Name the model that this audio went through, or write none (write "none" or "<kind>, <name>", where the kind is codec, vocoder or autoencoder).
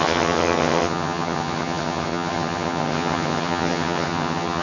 vocoder, HiFi-GAN